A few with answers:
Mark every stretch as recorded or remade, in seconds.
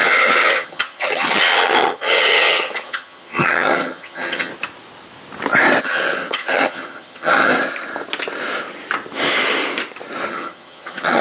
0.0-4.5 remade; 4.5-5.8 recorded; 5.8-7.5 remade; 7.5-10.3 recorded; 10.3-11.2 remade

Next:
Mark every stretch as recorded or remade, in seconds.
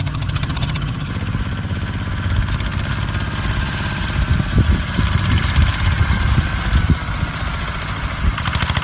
0.0-1.1 remade; 1.1-8.8 recorded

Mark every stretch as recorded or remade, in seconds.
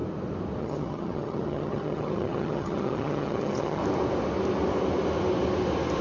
0.0-0.6 recorded; 0.6-3.8 remade; 3.8-6.0 recorded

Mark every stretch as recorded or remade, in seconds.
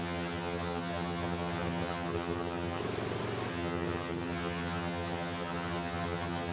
0.0-2.8 remade; 2.8-3.5 recorded; 3.5-6.5 remade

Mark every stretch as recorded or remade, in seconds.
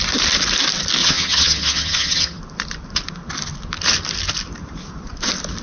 0.0-1.0 recorded; 1.0-2.4 remade; 2.4-5.6 recorded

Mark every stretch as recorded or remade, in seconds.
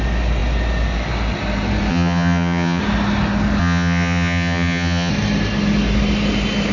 0.0-1.9 recorded; 1.9-2.8 remade; 2.8-3.6 recorded; 3.6-5.1 remade; 5.1-6.7 recorded